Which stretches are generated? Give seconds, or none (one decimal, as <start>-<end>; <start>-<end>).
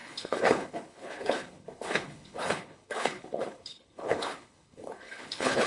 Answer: 0.0-5.7